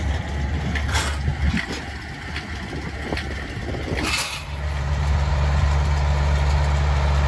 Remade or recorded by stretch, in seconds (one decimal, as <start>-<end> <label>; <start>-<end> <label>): 0.0-7.3 recorded